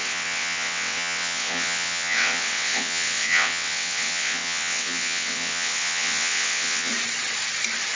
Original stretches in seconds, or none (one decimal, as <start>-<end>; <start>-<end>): 6.9-8.0